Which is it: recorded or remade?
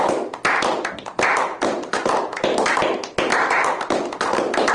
recorded